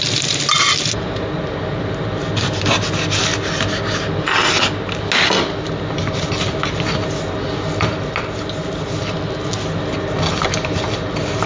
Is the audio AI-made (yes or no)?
no